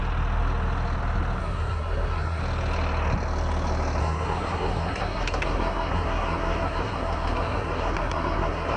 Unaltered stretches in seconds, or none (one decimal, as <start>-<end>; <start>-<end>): 0.0-1.4; 2.4-4.0